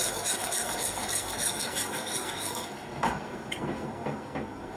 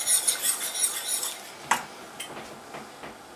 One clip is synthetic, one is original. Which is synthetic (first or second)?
first